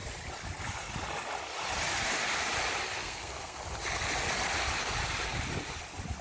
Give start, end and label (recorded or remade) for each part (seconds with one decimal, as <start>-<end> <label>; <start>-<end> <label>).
0.0-3.0 recorded; 3.0-3.6 remade; 3.6-6.2 recorded